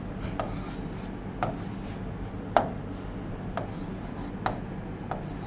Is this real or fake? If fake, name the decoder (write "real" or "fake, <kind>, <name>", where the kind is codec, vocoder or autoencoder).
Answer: real